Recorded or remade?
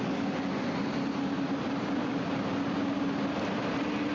recorded